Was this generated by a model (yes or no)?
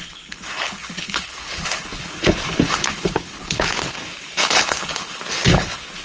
yes